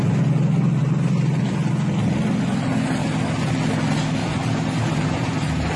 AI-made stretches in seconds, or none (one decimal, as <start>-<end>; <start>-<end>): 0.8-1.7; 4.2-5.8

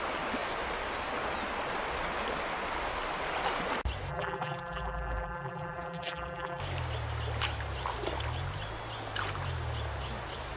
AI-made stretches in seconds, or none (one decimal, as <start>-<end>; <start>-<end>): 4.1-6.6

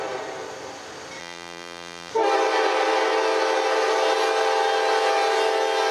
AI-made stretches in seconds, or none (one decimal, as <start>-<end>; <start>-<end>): 1.2-2.1